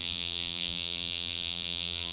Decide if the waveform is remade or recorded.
remade